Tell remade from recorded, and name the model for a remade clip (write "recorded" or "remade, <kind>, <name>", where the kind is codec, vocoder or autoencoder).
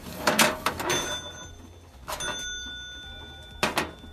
recorded